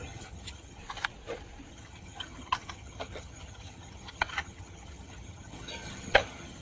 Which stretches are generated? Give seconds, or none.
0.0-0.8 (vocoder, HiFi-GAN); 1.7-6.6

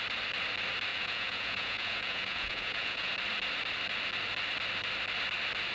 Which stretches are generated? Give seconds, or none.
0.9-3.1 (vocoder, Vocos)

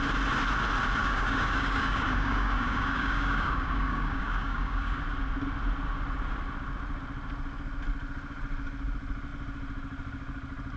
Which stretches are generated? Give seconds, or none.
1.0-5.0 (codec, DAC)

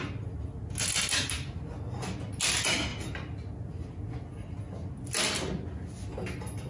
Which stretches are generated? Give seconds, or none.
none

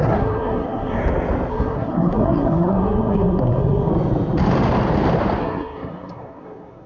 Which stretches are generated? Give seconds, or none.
0.0-1.0 (codec, SNAC); 1.5-3.9; 5.4-6.9

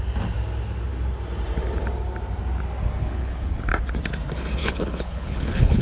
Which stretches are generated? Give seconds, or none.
3.0-3.6 (codec, HILCodec); 4.6-5.8

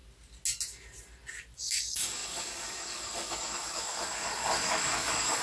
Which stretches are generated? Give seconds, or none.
1.6-5.4 (codec, DAC)